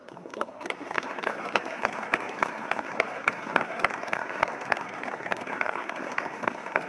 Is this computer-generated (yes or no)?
yes